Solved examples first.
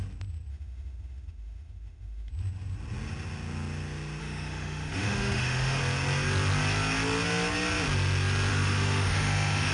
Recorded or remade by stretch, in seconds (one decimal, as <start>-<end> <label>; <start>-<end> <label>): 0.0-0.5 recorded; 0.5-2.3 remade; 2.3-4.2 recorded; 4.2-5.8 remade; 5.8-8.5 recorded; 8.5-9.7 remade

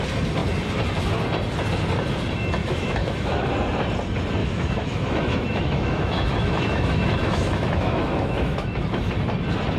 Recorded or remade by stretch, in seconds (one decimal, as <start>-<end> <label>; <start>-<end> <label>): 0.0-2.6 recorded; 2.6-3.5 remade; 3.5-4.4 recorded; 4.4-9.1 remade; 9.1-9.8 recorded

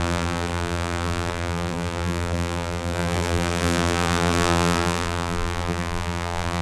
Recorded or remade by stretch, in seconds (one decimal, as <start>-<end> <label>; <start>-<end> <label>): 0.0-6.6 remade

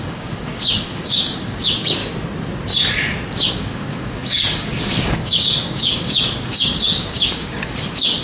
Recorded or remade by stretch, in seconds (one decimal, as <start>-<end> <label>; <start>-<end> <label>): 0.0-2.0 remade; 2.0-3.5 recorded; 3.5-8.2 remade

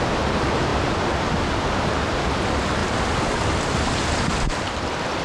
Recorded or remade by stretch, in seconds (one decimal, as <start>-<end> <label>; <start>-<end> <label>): 0.0-5.2 recorded

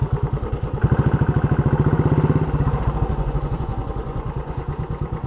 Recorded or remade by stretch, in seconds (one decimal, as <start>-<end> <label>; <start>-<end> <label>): 0.0-3.1 recorded; 3.1-5.3 remade

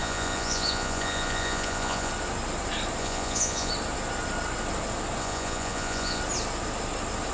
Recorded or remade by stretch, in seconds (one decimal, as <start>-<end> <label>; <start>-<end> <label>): 0.0-2.1 remade; 2.1-3.0 recorded; 3.0-3.7 remade; 3.7-5.2 recorded; 5.2-6.2 remade; 6.2-7.3 recorded